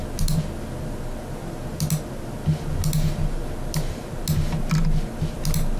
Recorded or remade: recorded